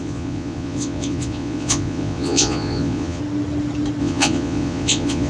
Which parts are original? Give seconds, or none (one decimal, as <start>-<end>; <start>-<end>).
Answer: 3.2-4.0